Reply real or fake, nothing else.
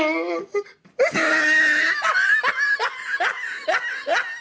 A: real